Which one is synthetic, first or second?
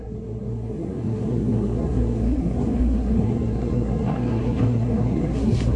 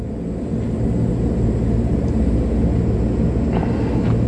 first